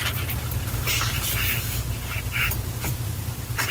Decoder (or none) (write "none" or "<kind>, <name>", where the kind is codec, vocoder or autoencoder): vocoder, BigVGAN v2